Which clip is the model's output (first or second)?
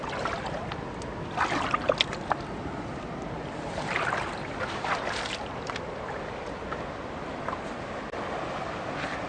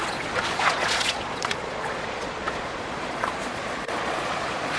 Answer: second